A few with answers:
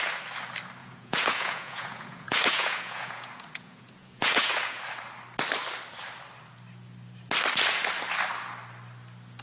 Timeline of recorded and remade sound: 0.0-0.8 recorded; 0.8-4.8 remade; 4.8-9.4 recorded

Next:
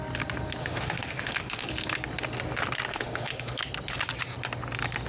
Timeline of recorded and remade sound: 0.0-0.6 recorded; 0.6-1.7 remade; 1.7-2.9 recorded; 2.9-3.6 remade; 3.6-5.1 recorded

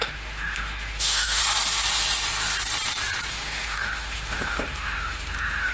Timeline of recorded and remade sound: 0.0-1.4 remade; 1.4-3.3 recorded; 3.3-5.7 remade

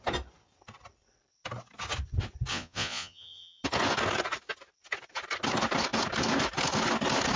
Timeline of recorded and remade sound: 0.0-2.5 recorded; 2.5-3.6 remade; 3.6-7.4 recorded

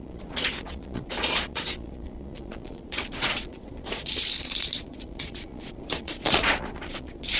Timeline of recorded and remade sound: 0.0-7.4 remade

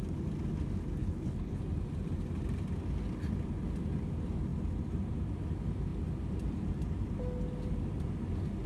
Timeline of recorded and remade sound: 0.0-1.0 recorded; 1.0-1.6 remade; 1.6-8.7 recorded

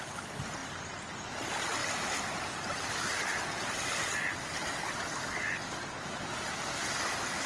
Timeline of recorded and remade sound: 0.0-7.5 recorded

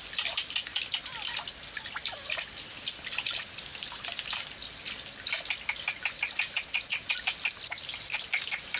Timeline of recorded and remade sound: 0.0-8.8 recorded